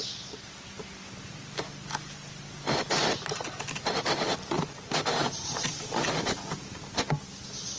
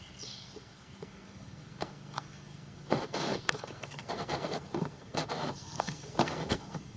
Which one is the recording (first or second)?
first